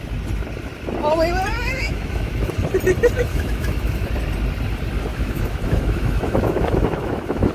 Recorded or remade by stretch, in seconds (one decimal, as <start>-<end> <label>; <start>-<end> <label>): 0.0-1.5 recorded; 1.5-2.5 remade; 2.5-3.3 recorded; 3.3-4.1 remade; 4.1-5.1 recorded; 5.1-7.5 remade